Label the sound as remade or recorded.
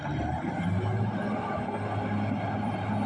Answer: recorded